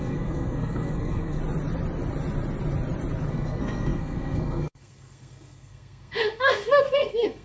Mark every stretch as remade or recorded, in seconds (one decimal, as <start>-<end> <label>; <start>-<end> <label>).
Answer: 0.0-1.4 remade; 1.4-3.3 recorded; 3.3-7.4 remade